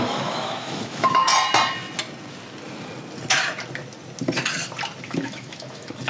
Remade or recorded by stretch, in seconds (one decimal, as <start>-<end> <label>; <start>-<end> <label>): 0.0-1.3 remade; 1.3-5.0 recorded; 5.0-6.1 remade